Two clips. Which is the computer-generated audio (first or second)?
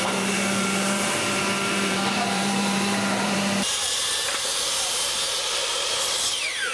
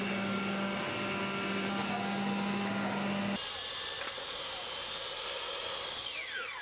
first